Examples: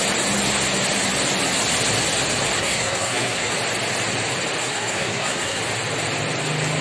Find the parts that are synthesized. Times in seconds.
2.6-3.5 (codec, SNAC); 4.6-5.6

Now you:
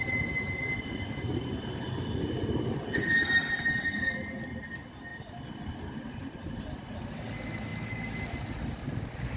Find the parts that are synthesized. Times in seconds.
none